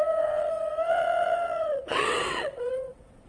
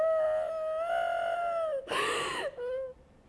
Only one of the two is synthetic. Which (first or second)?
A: first